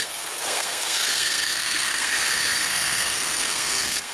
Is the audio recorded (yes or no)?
no